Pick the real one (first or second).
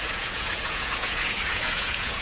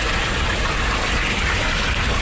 second